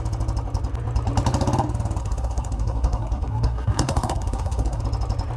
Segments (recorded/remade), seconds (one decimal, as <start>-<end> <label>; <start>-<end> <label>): 0.0-2.0 recorded; 2.0-4.8 remade; 4.8-5.4 recorded